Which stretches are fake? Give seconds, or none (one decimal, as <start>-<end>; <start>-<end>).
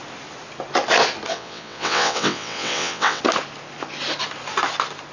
1.3-3.2